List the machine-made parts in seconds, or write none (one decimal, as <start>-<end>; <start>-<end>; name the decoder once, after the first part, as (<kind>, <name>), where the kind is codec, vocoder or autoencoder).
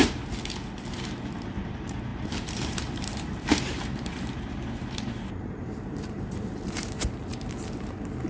0.9-7.3 (vocoder, BigVGAN v2)